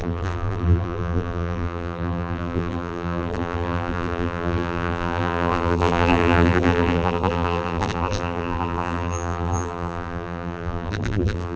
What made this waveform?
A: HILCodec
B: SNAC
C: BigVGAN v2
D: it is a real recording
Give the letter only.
C